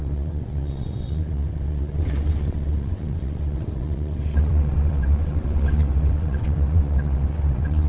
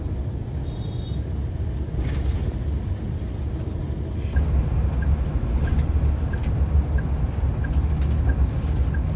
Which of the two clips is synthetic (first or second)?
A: first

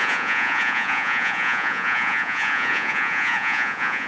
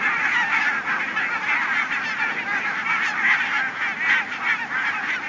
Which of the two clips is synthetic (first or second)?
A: first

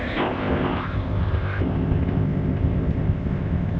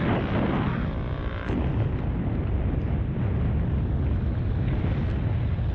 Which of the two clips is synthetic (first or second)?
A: first